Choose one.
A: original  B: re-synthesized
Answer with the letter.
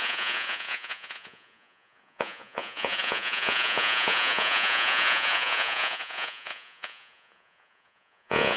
B